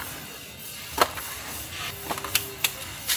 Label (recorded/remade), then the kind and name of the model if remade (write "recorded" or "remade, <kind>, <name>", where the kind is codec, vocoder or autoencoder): recorded